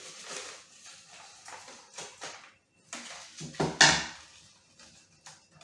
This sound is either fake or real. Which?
real